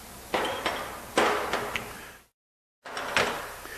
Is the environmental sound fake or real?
real